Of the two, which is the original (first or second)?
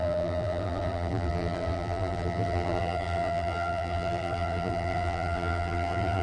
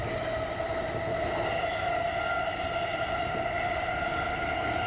second